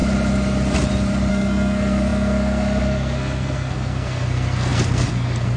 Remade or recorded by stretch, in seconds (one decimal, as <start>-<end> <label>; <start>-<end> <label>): 0.0-1.3 recorded; 1.3-5.6 remade